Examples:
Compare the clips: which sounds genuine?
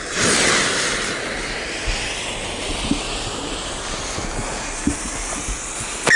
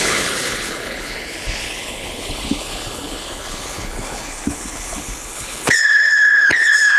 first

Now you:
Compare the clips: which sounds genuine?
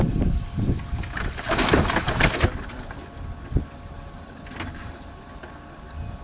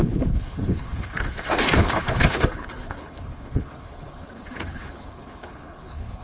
first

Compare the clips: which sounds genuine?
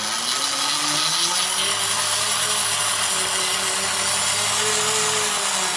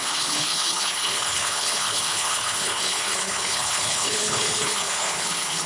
first